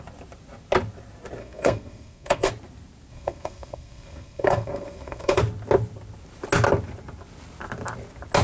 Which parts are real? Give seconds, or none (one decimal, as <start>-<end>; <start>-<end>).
0.0-1.4; 2.5-3.1; 5.4-8.4